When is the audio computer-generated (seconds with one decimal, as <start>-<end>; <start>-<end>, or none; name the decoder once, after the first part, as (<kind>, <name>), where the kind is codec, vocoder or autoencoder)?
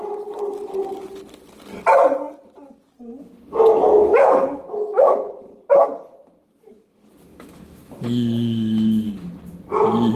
3.9-5.3 (autoencoder, DAC-VAE); 7.3-9.1